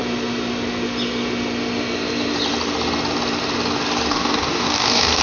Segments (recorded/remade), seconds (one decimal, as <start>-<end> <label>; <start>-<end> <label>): 0.0-4.1 recorded; 4.1-5.2 remade